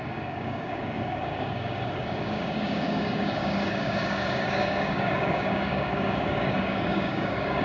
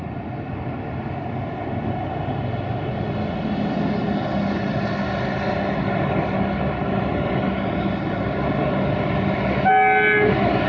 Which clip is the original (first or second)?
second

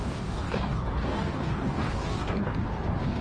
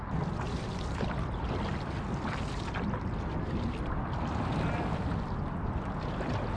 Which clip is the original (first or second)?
second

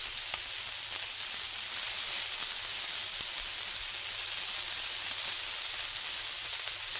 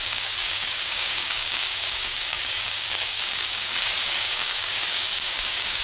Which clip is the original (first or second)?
first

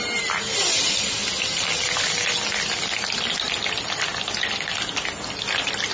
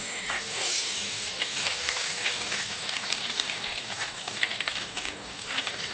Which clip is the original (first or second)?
first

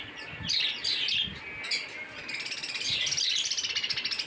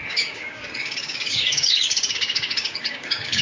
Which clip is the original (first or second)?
first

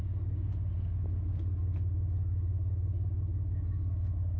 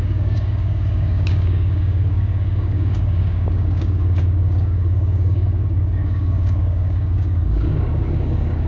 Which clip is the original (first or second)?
first